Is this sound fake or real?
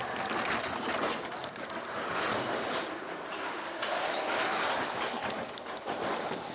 real